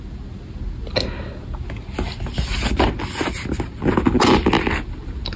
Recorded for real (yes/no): yes